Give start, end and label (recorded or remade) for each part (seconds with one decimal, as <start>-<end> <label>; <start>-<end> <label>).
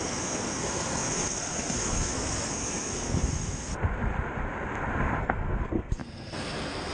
0.0-3.7 remade; 3.7-5.2 recorded; 5.2-6.9 remade